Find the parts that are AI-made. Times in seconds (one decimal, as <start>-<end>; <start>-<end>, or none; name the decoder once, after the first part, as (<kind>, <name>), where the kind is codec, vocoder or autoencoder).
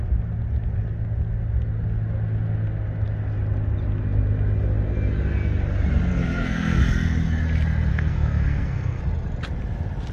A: 6.1-6.8 (codec, SNAC); 7.9-9.0